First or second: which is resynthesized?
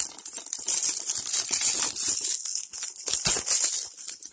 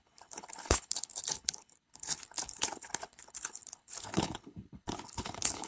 second